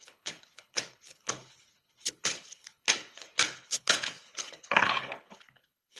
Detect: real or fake fake